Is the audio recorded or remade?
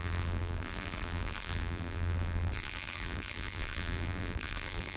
remade